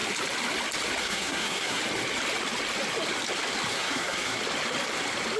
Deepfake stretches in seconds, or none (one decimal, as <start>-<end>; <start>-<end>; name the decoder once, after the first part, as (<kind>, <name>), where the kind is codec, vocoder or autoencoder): 1.0-1.8 (codec, SNAC); 3.7-4.4